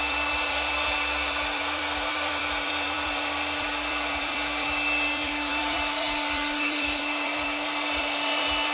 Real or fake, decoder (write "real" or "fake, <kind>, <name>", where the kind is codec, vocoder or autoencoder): fake, vocoder, BigVGAN v2